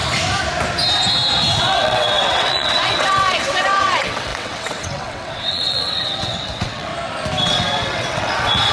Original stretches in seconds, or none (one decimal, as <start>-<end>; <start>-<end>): 0.0-1.6; 6.9-7.4